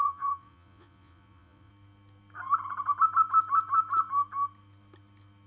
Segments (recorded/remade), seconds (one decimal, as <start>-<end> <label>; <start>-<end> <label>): 0.0-1.7 remade; 1.7-5.5 recorded